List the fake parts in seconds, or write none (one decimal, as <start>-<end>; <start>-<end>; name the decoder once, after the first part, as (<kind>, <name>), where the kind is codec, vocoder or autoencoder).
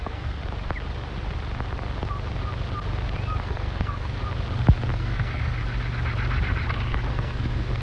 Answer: 0.0-0.4 (codec, SNAC); 3.4-4.2; 4.9-5.6; 7.1-7.8